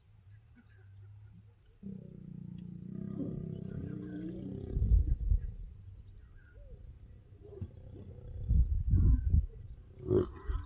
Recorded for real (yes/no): yes